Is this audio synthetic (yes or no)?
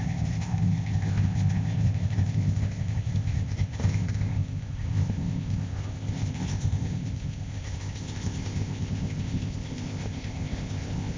yes